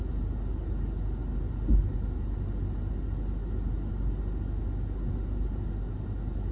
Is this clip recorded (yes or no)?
yes